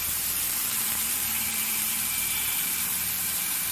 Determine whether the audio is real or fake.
fake